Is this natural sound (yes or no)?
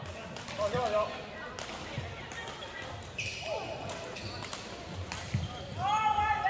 yes